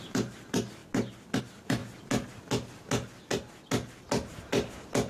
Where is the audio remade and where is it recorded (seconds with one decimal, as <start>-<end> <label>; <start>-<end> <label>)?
0.0-0.8 remade; 0.8-1.4 recorded; 1.4-1.8 remade; 1.8-5.1 recorded